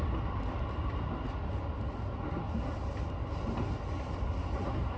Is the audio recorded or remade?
recorded